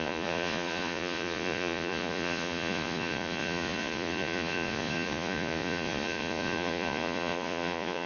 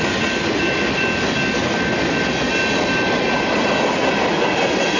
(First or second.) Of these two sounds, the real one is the second